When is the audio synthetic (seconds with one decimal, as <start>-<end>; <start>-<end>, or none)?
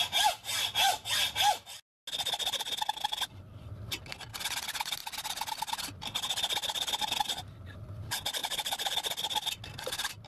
8.4-8.9